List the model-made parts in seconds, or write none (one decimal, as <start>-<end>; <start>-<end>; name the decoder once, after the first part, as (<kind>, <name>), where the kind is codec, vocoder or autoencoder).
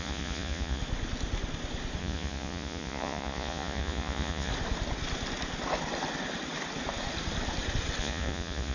0.0-0.8 (vocoder, Vocos); 2.0-4.5; 8.0-8.7